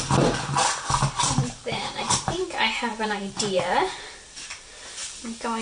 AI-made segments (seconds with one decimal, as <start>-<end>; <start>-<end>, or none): 1.2-2.4; 2.9-3.8